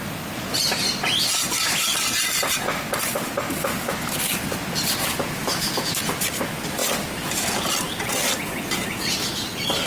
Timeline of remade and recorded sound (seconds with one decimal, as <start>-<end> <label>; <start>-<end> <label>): 0.0-6.8 recorded; 6.8-8.0 remade; 8.0-9.9 recorded